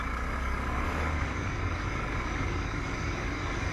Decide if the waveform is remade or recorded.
remade